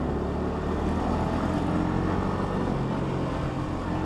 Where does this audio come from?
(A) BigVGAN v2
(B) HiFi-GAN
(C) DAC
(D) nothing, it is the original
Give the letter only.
D